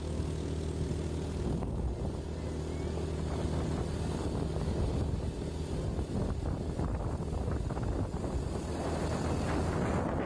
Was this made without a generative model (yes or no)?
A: yes